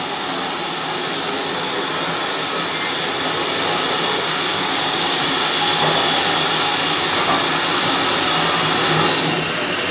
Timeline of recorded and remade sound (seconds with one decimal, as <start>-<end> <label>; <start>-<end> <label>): 0.0-4.5 recorded; 4.5-5.2 remade; 5.2-9.9 recorded